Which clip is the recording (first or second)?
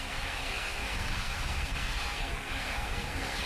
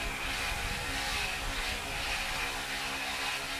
second